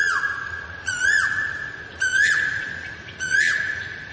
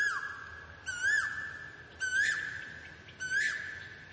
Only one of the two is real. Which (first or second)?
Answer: second